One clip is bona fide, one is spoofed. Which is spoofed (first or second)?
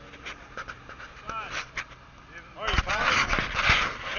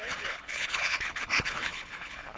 second